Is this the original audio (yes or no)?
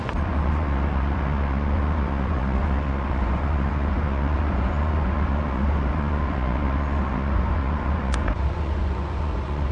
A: no